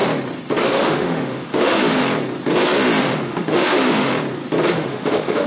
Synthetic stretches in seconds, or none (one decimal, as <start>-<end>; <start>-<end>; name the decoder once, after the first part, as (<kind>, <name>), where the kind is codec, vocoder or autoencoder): 0.6-2.0 (autoencoder, DAC-VAE); 3.0-4.1; 4.7-5.5